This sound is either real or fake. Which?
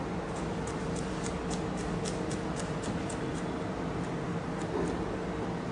real